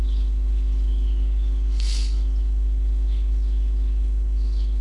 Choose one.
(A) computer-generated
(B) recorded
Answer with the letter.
A